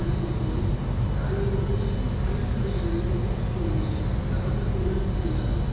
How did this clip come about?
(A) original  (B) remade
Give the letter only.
A